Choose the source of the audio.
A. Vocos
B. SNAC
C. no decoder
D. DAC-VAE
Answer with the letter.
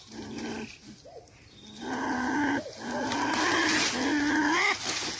C